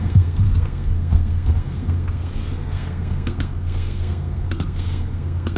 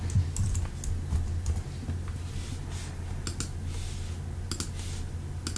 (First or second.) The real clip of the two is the second